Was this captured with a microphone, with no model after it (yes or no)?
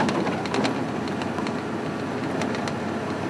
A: yes